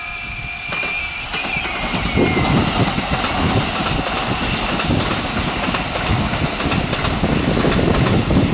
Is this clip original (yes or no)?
yes